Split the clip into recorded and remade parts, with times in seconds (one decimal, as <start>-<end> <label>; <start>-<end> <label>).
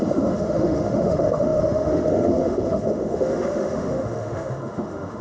0.0-5.2 remade